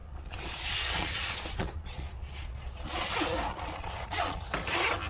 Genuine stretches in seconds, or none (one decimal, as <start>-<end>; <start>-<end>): 3.1-3.5; 4.4-5.1